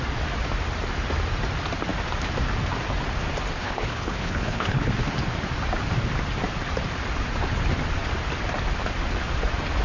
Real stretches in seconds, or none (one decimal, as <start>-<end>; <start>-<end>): 0.0-3.6; 4.9-9.8